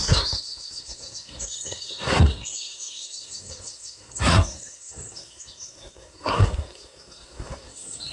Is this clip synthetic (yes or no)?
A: yes